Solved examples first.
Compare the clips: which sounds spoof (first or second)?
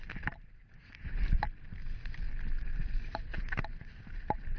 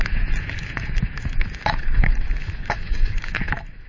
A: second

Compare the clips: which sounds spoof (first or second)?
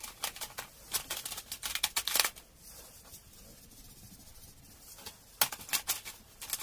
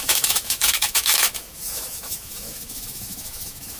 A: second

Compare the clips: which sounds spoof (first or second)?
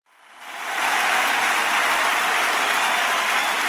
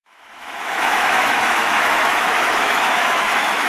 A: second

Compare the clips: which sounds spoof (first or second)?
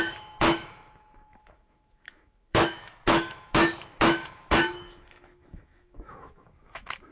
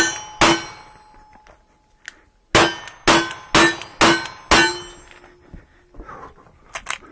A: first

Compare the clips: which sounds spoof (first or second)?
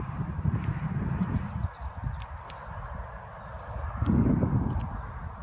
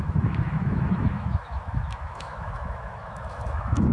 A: second